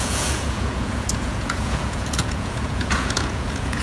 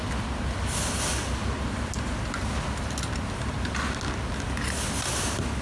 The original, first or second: second